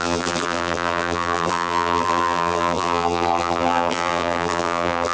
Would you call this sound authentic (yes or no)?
no